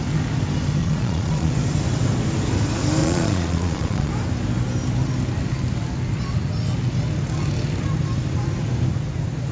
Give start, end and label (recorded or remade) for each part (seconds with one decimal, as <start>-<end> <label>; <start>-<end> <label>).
0.0-0.8 recorded; 0.8-1.5 remade; 1.5-3.0 recorded; 3.0-4.1 remade; 4.1-9.5 recorded